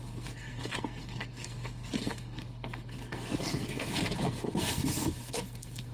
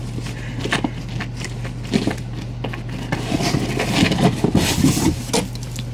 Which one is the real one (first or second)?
second